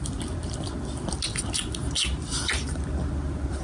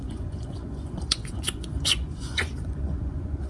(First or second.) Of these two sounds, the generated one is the second